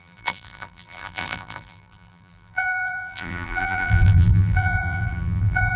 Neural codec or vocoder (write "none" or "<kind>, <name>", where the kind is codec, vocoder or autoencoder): vocoder, BigVGAN v2